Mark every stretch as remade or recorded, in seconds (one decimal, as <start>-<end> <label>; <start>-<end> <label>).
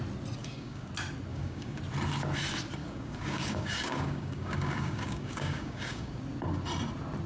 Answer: 0.0-0.4 recorded; 0.4-0.9 remade; 0.9-1.3 recorded; 1.3-1.8 remade; 1.8-2.8 recorded; 2.8-6.2 remade; 6.2-7.3 recorded